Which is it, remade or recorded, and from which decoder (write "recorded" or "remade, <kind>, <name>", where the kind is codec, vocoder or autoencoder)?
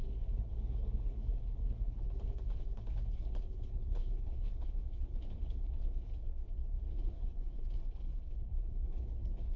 remade, codec, HILCodec